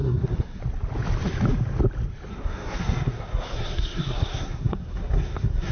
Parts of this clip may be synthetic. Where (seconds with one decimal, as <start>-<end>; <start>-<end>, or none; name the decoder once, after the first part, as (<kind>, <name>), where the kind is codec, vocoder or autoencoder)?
0.0-0.6 (codec, SNAC); 2.3-5.7